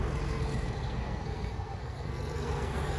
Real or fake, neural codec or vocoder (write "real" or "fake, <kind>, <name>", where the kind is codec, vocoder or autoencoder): fake, codec, SNAC